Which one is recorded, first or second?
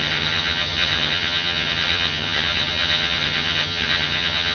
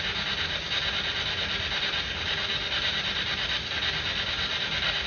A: second